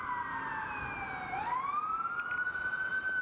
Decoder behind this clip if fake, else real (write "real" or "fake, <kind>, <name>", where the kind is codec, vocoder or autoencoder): real